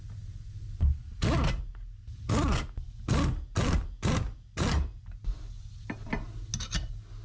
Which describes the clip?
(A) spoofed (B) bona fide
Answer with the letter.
B